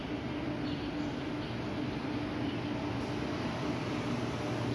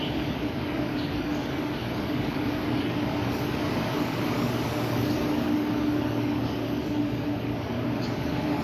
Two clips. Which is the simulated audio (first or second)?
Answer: second